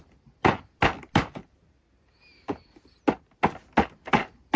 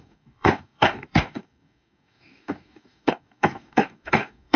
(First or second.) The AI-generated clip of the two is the second